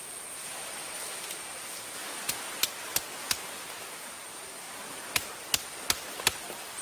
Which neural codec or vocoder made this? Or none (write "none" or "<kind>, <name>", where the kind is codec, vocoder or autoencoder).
none